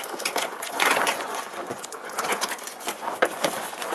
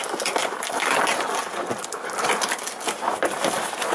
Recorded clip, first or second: second